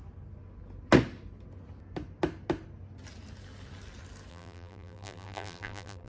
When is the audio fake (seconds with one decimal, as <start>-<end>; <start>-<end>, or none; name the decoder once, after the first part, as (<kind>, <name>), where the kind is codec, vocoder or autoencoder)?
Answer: 4.3-6.1 (vocoder, BigVGAN v2)